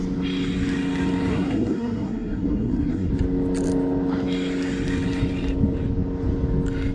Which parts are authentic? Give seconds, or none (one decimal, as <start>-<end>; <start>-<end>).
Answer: 0.0-1.3; 3.1-6.9